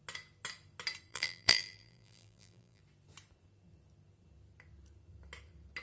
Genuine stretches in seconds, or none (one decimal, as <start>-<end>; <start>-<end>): 0.0-1.1; 2.8-5.8